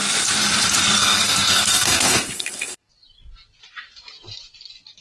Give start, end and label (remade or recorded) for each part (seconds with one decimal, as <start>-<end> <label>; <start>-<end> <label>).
0.0-1.0 recorded; 1.0-2.9 remade; 2.9-5.0 recorded